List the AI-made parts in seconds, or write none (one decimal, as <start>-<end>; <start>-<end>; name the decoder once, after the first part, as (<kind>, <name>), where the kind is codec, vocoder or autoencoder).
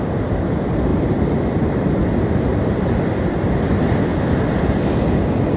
0.9-1.9 (vocoder, BigVGAN v2); 2.5-5.1